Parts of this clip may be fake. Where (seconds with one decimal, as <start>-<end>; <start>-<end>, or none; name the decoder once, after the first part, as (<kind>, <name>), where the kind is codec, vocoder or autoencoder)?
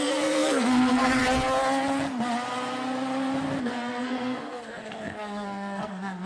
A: 0.0-1.2 (codec, SNAC); 3.6-6.3